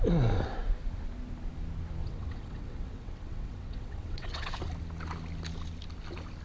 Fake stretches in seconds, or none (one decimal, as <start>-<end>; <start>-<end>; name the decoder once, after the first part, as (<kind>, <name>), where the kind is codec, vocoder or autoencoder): 2.0-4.6 (vocoder, WaveNeXt)